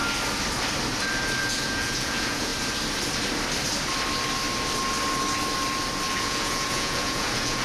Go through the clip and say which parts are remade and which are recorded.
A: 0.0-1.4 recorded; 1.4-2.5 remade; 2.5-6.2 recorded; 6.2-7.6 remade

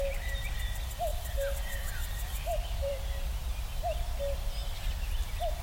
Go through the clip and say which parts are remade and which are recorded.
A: 0.0-1.1 recorded; 1.1-3.0 remade; 3.0-4.6 recorded; 4.6-5.1 remade; 5.1-5.6 recorded

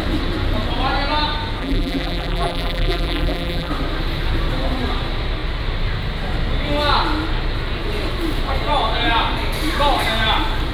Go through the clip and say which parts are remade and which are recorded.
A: 0.0-1.6 recorded; 1.6-3.7 remade; 3.7-10.7 recorded

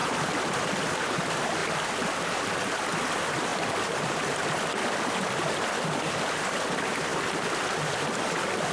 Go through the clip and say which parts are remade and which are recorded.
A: 0.0-1.2 recorded; 1.2-1.6 remade; 1.6-2.4 recorded; 2.4-3.5 remade; 3.5-5.7 recorded; 5.7-7.1 remade; 7.1-7.8 recorded; 7.8-8.7 remade

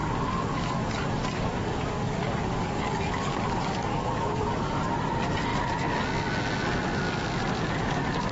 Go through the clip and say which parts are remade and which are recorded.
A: 0.0-4.8 remade; 4.8-8.3 recorded

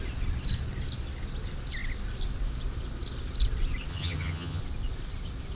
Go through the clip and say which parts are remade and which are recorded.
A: 0.0-3.9 recorded; 3.9-4.6 remade; 4.6-5.5 recorded

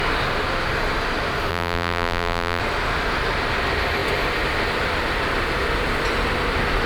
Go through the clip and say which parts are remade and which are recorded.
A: 0.0-1.5 recorded; 1.5-2.6 remade; 2.6-6.9 recorded